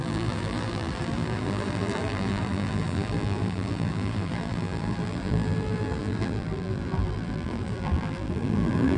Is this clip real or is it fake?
fake